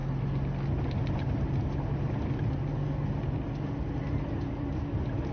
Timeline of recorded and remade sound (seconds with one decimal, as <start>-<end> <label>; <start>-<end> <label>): 0.0-5.3 recorded